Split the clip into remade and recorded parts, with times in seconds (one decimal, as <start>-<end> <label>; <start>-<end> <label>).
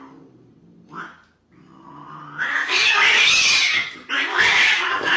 0.0-2.6 recorded; 2.6-3.3 remade; 3.3-4.3 recorded; 4.3-5.2 remade